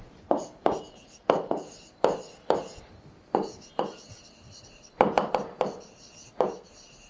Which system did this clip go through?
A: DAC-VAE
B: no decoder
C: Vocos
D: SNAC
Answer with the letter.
B